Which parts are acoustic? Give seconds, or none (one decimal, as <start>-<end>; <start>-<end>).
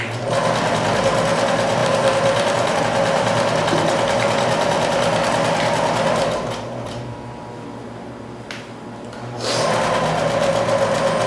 0.0-11.3